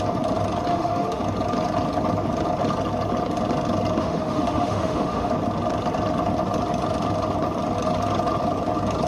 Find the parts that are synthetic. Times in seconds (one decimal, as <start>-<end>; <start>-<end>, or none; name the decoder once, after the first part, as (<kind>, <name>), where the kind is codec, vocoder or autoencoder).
0.7-1.2 (autoencoder, DAC-VAE); 4.0-5.3